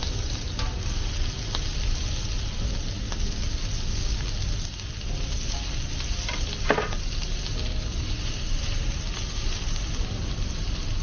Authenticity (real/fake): real